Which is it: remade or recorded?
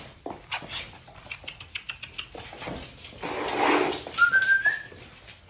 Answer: recorded